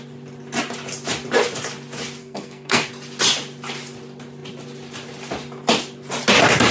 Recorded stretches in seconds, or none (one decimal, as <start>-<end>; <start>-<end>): 0.0-2.2; 2.9-6.7